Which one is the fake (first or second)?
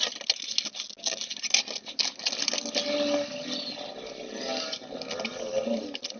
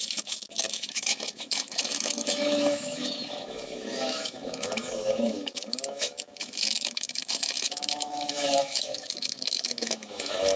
second